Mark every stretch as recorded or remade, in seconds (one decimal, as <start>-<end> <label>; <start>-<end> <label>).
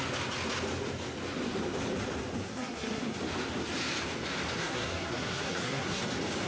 0.0-2.4 recorded; 2.4-3.2 remade; 3.2-4.6 recorded; 4.6-6.0 remade; 6.0-6.5 recorded